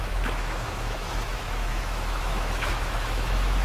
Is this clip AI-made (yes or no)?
yes